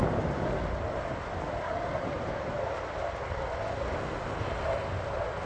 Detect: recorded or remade recorded